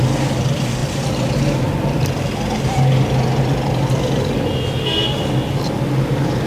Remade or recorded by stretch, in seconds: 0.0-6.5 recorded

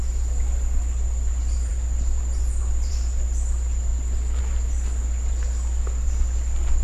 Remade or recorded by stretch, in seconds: 0.0-6.8 recorded

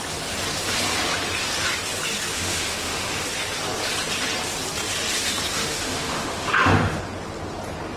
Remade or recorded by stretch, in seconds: 0.0-2.3 recorded; 2.3-3.2 remade; 3.2-5.6 recorded; 5.6-7.0 remade; 7.0-8.0 recorded

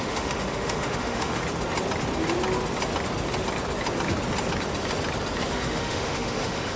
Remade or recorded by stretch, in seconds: 0.0-1.4 remade; 1.4-5.5 recorded; 5.5-6.8 remade

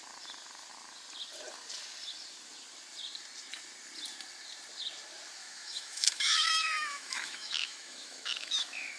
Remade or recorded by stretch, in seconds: 0.0-5.4 recorded; 5.4-9.0 remade

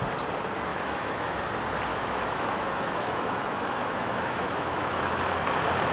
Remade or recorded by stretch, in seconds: 0.0-0.7 recorded; 0.7-1.4 remade; 1.4-1.9 recorded; 1.9-5.2 remade; 5.2-5.9 recorded